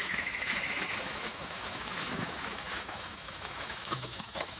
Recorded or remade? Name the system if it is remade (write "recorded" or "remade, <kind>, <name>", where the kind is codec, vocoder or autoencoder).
remade, autoencoder, DAC-VAE